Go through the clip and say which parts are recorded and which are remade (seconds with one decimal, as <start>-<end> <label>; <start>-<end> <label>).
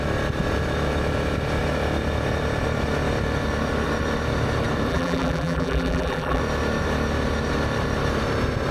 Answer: 0.0-4.9 recorded; 4.9-6.4 remade; 6.4-8.7 recorded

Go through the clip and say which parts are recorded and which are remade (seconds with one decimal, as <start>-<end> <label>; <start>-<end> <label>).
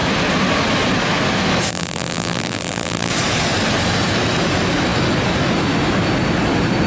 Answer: 0.0-1.7 recorded; 1.7-3.1 remade; 3.1-6.9 recorded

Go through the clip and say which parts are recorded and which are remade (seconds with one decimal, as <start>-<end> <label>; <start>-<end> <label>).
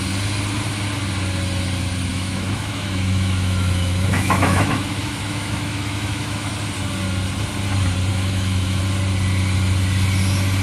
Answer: 0.0-2.1 recorded; 2.1-6.5 remade; 6.5-8.1 recorded; 8.1-8.8 remade; 8.8-10.6 recorded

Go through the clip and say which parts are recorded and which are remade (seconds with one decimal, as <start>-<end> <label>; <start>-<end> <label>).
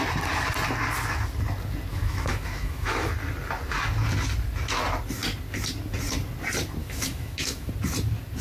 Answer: 0.0-1.9 recorded; 1.9-3.1 remade; 3.1-6.8 recorded; 6.8-7.7 remade; 7.7-8.4 recorded